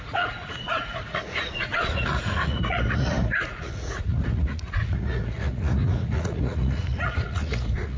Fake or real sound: fake